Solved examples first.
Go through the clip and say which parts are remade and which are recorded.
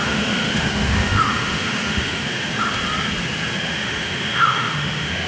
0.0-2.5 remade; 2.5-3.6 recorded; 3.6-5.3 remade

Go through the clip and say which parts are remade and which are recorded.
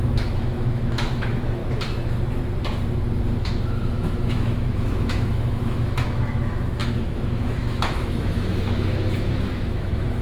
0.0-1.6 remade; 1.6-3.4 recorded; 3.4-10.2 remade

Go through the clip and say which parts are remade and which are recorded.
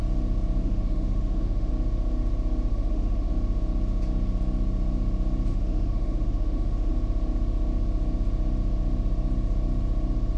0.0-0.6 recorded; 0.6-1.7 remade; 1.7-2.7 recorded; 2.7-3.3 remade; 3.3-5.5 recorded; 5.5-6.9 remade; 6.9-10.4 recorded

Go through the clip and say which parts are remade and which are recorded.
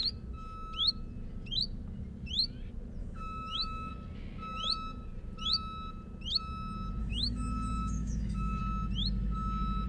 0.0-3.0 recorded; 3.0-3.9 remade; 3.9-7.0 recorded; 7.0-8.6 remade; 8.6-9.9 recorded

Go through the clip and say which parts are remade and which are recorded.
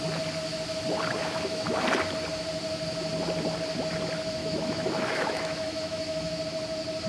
0.0-1.2 recorded; 1.2-1.8 remade; 1.8-4.4 recorded; 4.4-6.4 remade; 6.4-7.1 recorded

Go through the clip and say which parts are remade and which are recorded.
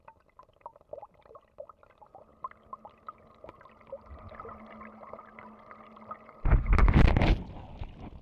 0.0-8.2 recorded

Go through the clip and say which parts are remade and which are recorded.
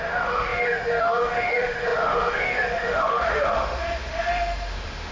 0.0-5.1 remade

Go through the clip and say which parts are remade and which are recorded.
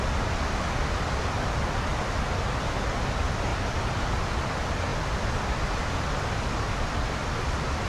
0.0-7.9 recorded